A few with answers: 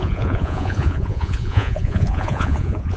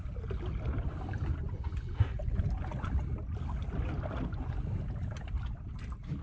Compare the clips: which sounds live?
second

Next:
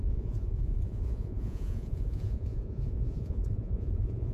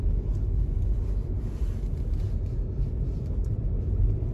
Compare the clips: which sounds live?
second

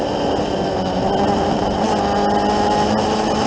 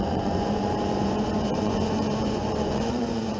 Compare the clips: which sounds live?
first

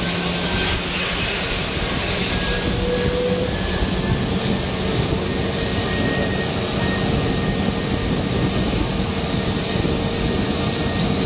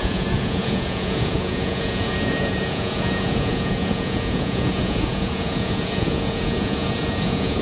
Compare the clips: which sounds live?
first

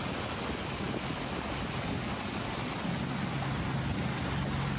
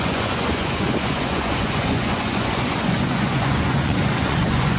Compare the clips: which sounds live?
first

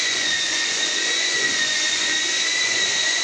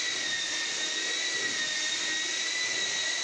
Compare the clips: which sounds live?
second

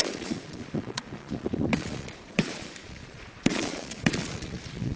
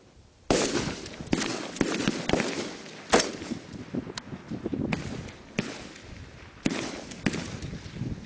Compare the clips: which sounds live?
second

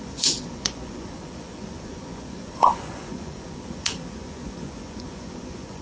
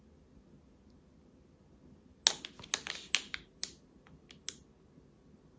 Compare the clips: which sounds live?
second